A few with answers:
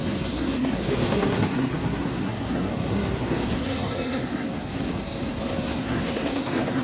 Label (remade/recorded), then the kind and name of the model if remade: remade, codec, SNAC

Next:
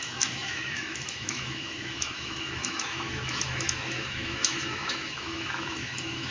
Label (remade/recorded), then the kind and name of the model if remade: remade, autoencoder, DAC-VAE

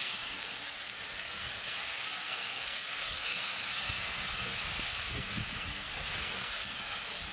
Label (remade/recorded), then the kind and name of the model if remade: remade, codec, SNAC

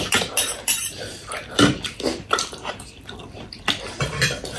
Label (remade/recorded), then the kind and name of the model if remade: remade, vocoder, BigVGAN v2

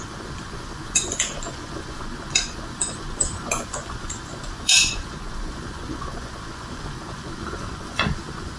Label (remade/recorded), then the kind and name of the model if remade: remade, vocoder, Vocos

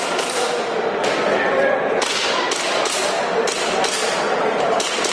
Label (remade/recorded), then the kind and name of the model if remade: recorded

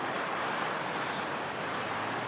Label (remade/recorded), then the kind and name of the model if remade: recorded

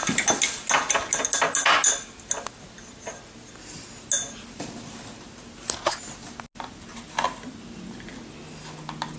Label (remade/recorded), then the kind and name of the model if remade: recorded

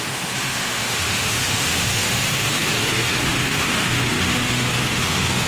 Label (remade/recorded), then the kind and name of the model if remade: remade, autoencoder, DAC-VAE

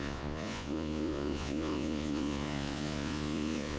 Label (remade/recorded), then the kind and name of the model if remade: remade, vocoder, Vocos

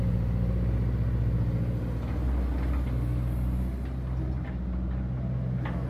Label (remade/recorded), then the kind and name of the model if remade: recorded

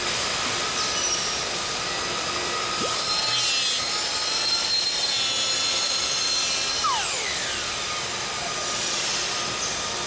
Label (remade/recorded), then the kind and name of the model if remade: recorded